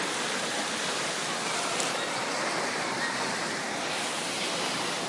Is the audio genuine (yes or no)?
no